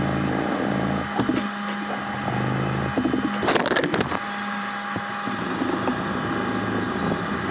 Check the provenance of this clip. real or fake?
real